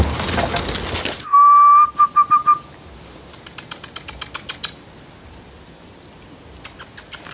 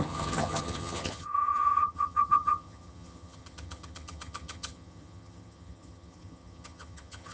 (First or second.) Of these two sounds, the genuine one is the first